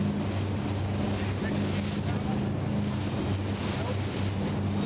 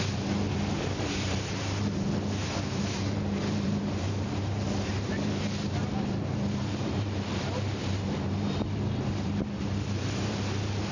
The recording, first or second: first